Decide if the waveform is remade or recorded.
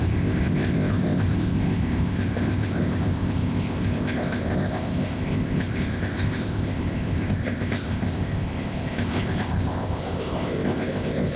remade